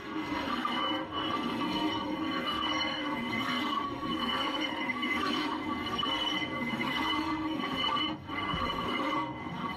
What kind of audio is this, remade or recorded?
remade